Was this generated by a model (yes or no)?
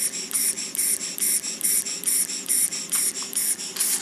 no